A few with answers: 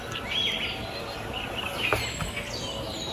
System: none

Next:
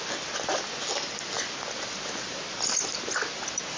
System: none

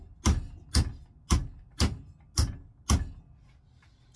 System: none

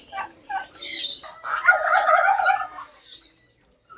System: none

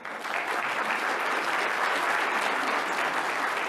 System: vocoder, BigVGAN v2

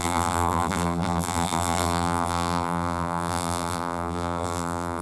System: vocoder, BigVGAN v2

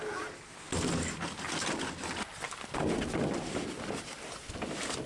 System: none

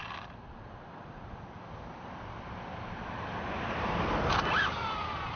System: none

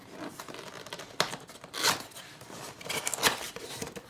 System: none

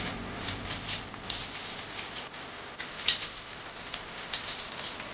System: none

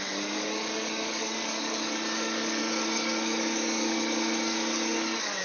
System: codec, DAC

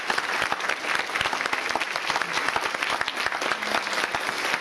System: none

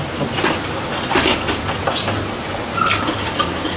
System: none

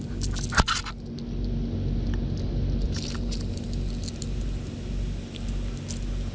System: none